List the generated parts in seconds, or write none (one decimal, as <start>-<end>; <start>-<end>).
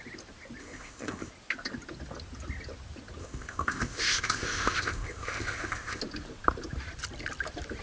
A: 0.6-1.3; 3.2-6.0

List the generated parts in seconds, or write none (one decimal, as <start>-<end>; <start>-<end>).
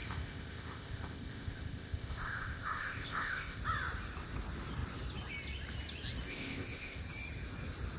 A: 0.0-3.6; 6.3-7.0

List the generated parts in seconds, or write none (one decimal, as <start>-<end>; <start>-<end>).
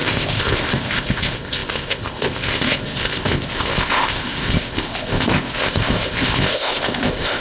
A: 0.0-7.4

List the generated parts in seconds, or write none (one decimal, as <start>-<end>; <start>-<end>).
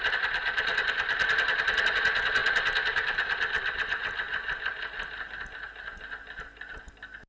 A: none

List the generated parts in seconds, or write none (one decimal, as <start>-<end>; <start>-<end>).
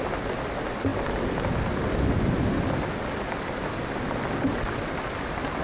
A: none